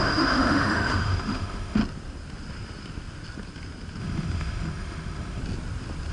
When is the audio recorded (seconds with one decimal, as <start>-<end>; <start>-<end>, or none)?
1.8-4.0; 5.4-6.1